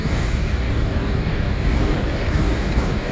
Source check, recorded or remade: remade